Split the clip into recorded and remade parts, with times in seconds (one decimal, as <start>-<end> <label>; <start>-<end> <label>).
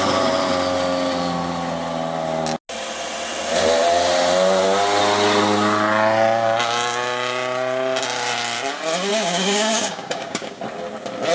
0.0-9.1 recorded; 9.1-10.6 remade; 10.6-11.3 recorded